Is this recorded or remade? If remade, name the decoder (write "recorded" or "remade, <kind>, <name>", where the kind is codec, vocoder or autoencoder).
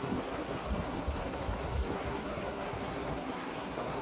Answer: remade, codec, SNAC